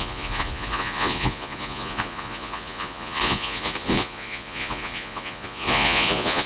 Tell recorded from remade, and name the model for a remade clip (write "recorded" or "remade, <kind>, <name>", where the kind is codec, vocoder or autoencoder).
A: remade, vocoder, Vocos